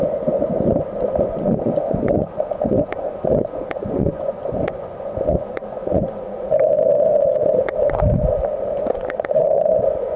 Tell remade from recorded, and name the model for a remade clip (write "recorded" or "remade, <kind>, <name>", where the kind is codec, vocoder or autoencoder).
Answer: remade, vocoder, Vocos